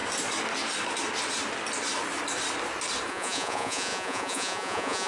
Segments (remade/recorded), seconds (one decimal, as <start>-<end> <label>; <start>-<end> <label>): 0.0-3.1 recorded; 3.1-5.1 remade